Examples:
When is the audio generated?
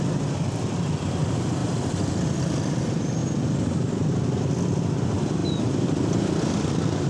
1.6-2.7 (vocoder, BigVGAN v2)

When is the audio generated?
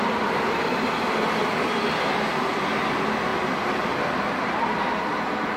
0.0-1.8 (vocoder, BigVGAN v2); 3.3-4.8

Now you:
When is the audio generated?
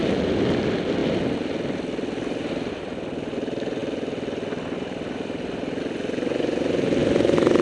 7.0-7.6 (vocoder, BigVGAN v2)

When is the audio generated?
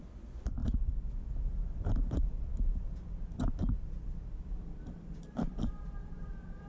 0.0-2.5 (vocoder, BigVGAN v2); 4.4-6.7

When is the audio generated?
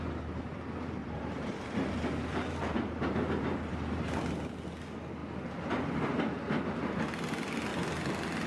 1.0-4.2 (vocoder, BigVGAN v2)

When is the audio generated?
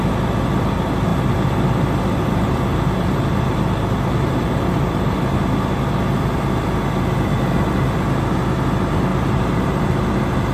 1.1-5.2 (vocoder, BigVGAN v2); 9.1-9.8